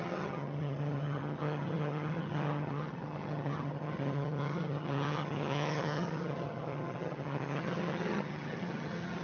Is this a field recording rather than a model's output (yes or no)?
no